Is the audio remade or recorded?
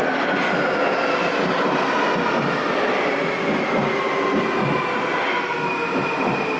recorded